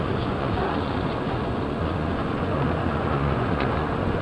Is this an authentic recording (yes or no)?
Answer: no